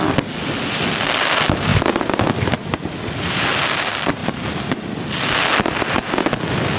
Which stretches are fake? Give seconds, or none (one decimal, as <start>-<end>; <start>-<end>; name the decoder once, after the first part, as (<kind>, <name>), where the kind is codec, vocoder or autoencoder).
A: none